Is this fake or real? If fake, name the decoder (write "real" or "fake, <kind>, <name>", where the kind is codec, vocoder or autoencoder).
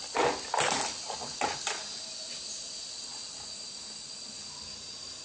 real